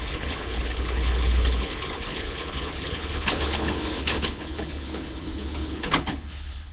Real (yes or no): no